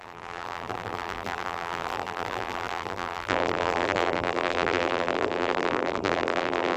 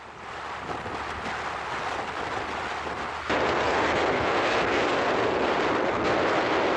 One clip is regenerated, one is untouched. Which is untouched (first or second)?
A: second